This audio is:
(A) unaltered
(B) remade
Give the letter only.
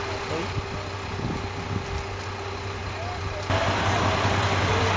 A